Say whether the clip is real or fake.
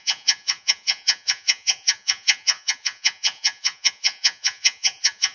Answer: fake